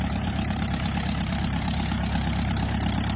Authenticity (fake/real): real